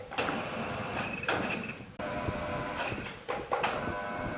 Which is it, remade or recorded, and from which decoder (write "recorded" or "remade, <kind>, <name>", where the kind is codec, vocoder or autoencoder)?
recorded